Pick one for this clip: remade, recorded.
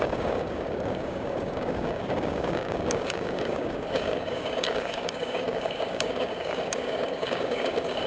remade